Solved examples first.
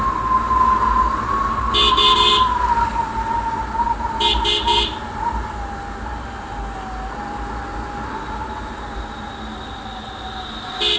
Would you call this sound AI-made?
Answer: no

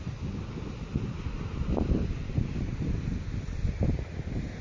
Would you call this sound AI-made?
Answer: no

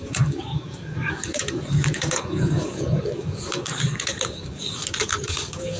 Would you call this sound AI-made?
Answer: yes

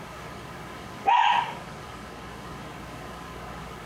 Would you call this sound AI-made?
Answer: yes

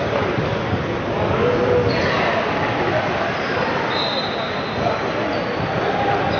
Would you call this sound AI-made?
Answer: no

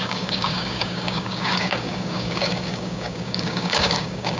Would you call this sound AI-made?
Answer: yes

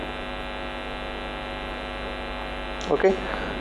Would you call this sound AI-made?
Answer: no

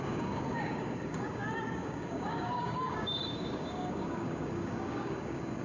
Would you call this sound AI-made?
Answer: yes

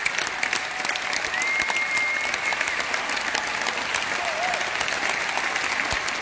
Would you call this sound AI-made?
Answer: no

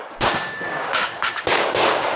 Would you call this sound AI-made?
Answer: yes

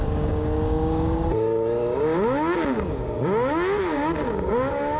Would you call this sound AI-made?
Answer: yes